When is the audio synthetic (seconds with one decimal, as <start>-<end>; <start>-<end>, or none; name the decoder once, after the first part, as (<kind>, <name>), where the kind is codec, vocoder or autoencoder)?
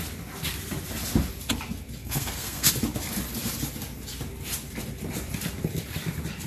2.0-2.7 (codec, SNAC)